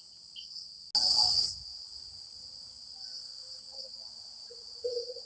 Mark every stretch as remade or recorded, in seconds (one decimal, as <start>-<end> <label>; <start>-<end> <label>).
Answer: 0.0-5.2 recorded